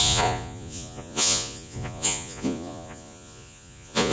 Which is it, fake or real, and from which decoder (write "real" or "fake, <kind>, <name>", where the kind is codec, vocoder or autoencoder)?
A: fake, vocoder, Vocos